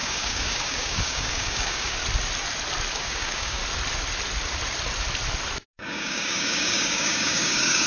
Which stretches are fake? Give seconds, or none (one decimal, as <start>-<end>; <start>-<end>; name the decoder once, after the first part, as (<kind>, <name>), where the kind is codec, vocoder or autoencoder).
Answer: 0.0-2.0 (codec, DAC); 2.9-3.6; 5.7-7.9